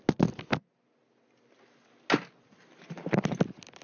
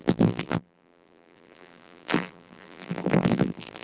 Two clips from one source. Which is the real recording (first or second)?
first